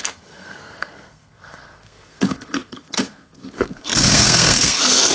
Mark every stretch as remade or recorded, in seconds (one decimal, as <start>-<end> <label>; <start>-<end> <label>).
0.0-5.1 remade